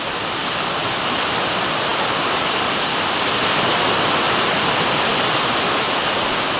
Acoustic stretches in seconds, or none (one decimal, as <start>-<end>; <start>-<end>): 0.0-6.6